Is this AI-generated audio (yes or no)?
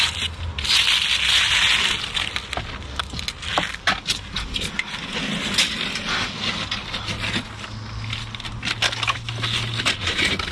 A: no